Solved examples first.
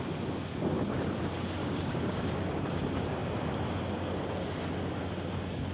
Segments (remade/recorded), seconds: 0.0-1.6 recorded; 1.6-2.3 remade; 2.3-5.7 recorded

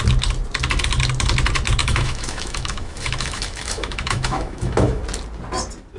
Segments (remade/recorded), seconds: 0.0-1.8 recorded; 1.8-5.0 remade; 5.0-6.0 recorded

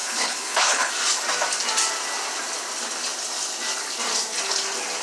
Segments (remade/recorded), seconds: 0.0-0.9 remade; 0.9-5.0 recorded